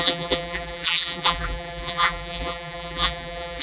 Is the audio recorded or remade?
remade